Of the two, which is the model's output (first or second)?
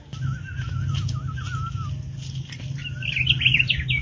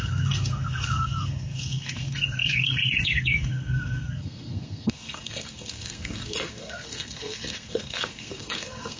second